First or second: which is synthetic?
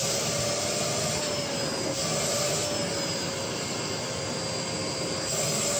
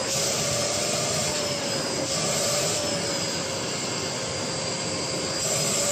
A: second